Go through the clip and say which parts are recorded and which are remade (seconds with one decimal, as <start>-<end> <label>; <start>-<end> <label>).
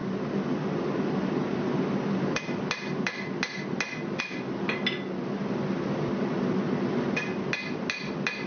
0.0-8.5 recorded